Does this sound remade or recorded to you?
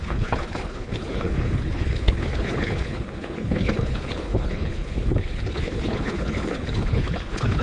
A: remade